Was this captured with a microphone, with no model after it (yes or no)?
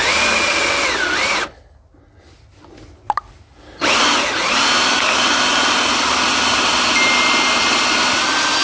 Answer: yes